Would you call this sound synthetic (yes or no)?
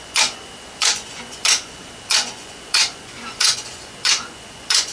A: yes